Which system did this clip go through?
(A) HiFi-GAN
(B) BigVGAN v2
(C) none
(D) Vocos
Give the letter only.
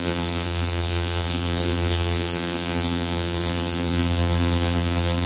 B